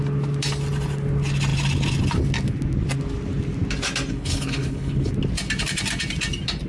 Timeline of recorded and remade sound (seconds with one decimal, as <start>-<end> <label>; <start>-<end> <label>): 0.0-4.1 recorded; 4.1-5.1 remade; 5.1-6.7 recorded